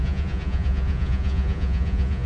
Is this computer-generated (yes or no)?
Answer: yes